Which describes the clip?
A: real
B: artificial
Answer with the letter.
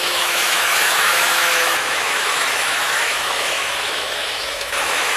B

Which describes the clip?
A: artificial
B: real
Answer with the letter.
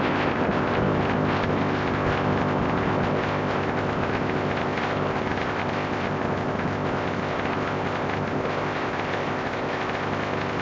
A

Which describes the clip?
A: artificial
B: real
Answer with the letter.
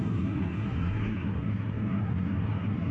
A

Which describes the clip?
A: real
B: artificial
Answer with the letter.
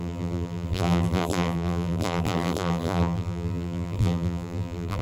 B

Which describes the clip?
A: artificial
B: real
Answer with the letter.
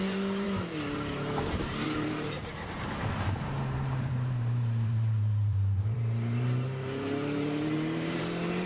A